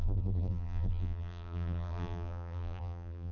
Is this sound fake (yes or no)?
yes